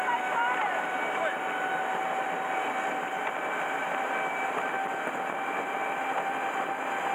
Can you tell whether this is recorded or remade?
recorded